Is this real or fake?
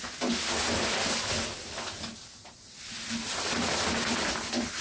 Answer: real